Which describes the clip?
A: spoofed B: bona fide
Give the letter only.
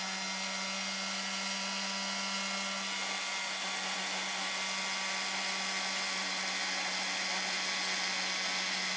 B